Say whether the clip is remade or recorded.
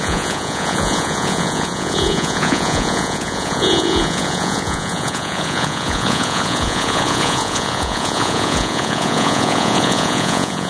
remade